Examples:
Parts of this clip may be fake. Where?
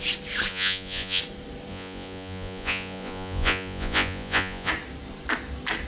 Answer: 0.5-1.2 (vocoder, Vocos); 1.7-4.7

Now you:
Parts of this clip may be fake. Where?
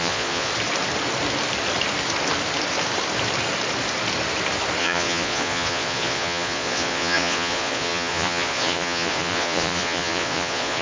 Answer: 0.0-0.5 (vocoder, Vocos); 4.8-10.8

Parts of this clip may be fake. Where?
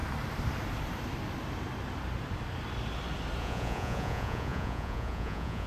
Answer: 3.4-5.7 (vocoder, Vocos)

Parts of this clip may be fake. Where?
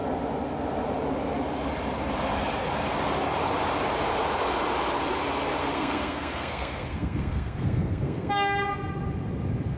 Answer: 5.6-8.3 (codec, SNAC)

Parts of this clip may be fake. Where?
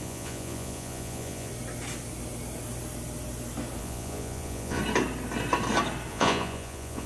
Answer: 0.0-1.5 (vocoder, Vocos); 3.8-4.8; 6.1-7.1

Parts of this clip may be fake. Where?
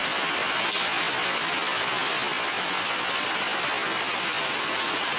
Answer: 4.4-5.2 (vocoder, Vocos)